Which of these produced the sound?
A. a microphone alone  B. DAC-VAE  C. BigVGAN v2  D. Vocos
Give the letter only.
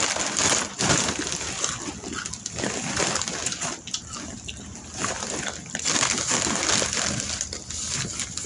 A